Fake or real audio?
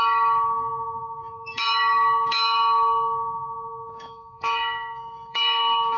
fake